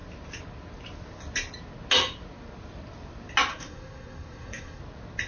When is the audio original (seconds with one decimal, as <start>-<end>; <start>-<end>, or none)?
0.0-3.5; 4.8-5.3